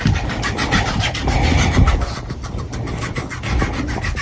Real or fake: real